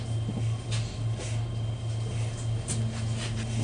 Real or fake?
real